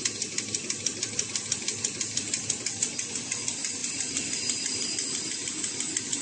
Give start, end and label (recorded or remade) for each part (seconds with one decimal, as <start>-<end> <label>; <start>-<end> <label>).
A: 0.0-6.2 recorded